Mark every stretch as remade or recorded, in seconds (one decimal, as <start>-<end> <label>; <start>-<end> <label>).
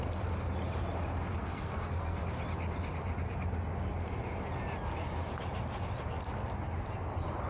0.0-1.3 recorded; 1.3-2.2 remade; 2.2-7.5 recorded